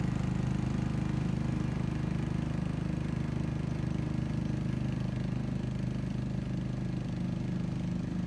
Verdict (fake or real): real